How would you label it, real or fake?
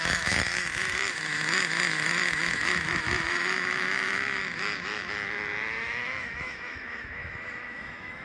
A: fake